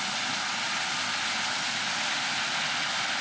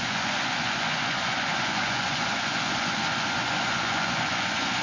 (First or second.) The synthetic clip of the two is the second